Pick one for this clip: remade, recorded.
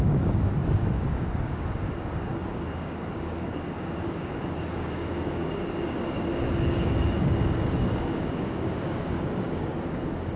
remade